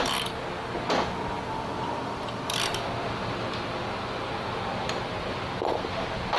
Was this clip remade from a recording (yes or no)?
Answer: no